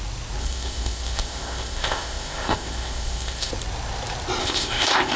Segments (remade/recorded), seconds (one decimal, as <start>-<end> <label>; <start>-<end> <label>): 0.0-0.4 recorded; 0.4-3.5 remade; 3.5-4.4 recorded; 4.4-5.2 remade